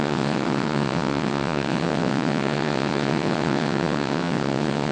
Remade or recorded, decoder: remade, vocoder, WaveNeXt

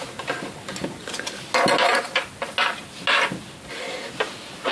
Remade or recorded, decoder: recorded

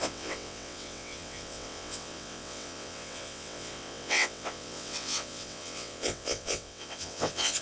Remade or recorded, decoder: remade, vocoder, WaveNeXt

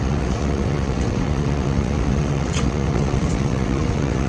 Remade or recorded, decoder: remade, vocoder, WaveNeXt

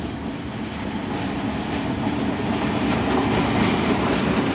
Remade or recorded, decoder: recorded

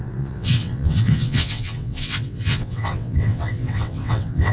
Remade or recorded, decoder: remade, vocoder, WaveNeXt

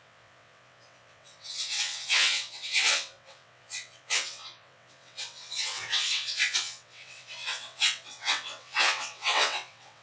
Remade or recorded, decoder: remade, vocoder, WaveNeXt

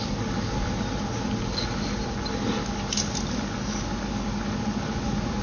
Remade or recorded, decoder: recorded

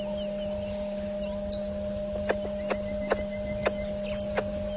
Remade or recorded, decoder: recorded